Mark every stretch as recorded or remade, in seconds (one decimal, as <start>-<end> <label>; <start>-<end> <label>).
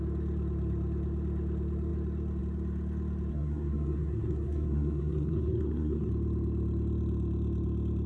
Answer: 0.0-3.3 recorded; 3.3-6.1 remade; 6.1-8.1 recorded